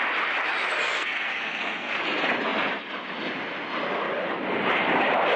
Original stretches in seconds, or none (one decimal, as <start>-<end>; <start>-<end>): 0.0-0.8; 1.9-5.4